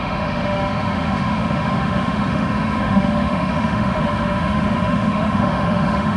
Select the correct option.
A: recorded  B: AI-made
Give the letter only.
B